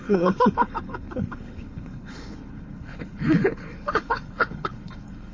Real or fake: fake